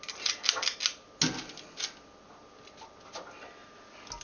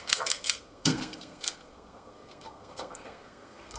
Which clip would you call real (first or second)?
first